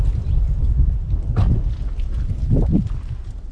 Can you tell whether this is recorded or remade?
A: recorded